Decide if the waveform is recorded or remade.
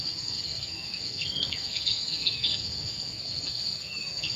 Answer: remade